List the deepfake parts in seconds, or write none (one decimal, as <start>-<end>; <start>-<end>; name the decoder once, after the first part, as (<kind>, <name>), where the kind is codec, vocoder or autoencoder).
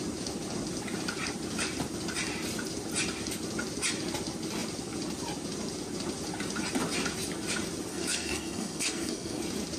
7.9-9.4 (codec, SNAC)